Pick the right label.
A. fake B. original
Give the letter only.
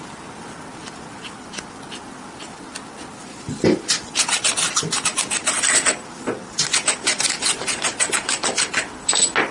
B